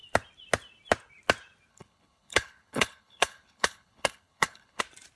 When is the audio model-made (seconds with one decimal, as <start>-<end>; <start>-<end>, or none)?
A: 1.7-4.8